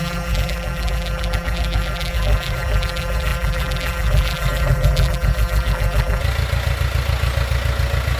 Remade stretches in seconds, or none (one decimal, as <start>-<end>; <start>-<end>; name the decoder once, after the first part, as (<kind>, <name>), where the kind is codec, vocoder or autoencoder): 0.0-6.2 (vocoder, BigVGAN v2)